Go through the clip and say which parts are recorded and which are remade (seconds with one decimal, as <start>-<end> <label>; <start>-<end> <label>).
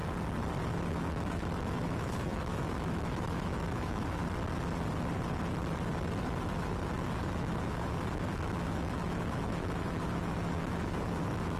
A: 0.0-0.9 recorded; 0.9-4.2 remade; 4.2-6.9 recorded; 6.9-11.6 remade